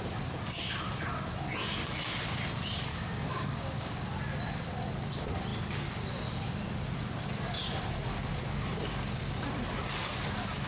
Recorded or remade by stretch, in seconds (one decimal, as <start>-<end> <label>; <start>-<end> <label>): 0.0-2.9 recorded; 2.9-4.2 remade; 4.2-10.7 recorded